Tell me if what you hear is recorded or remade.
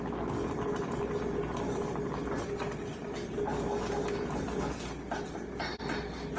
recorded